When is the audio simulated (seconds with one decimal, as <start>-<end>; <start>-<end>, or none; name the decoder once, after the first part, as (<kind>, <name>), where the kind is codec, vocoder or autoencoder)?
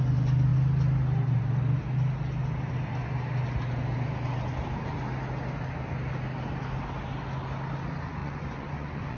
8.2-9.2 (vocoder, Vocos)